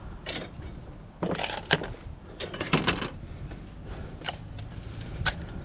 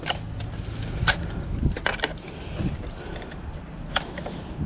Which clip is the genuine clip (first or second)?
second